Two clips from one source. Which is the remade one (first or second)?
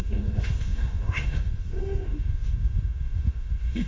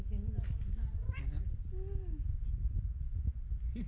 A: first